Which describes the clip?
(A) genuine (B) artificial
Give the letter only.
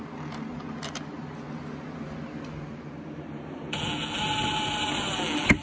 A